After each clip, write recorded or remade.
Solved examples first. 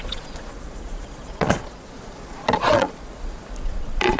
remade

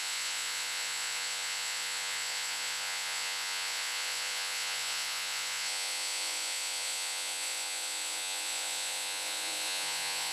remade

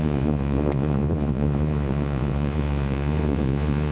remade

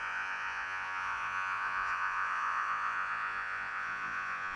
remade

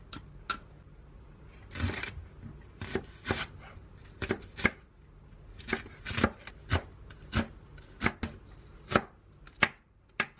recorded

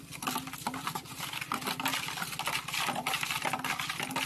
recorded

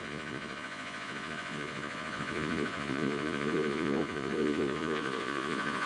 remade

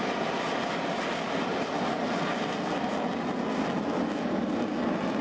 recorded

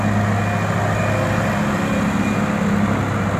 recorded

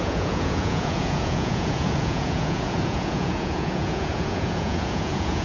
remade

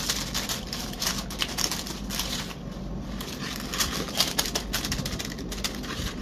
recorded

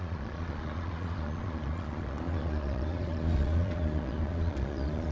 remade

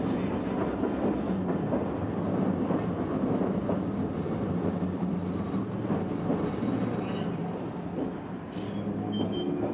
recorded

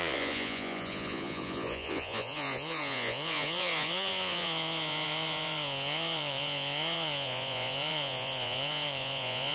remade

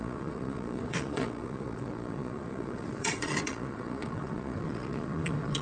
remade